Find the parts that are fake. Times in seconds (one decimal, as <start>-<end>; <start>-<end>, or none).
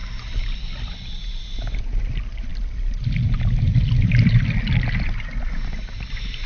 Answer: none